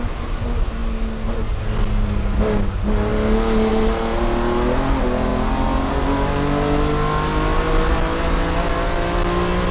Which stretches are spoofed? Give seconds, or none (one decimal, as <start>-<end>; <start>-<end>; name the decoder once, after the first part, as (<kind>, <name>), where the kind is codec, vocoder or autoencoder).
none